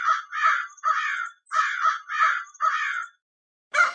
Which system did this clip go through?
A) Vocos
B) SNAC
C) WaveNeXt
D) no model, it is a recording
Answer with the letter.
D